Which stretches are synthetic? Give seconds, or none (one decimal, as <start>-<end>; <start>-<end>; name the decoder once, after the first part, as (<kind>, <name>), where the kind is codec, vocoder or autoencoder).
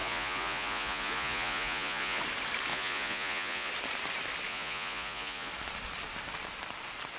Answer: 0.0-2.2 (vocoder, Vocos); 2.7-3.7; 4.5-5.5